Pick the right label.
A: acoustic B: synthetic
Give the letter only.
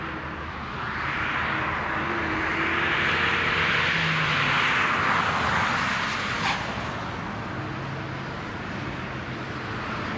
A